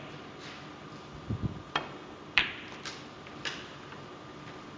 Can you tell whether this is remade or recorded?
remade